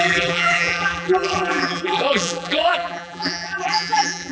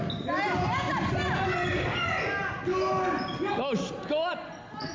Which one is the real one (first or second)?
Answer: second